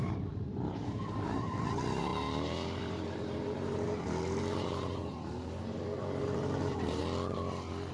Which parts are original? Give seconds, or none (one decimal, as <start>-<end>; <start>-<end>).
7.0-7.9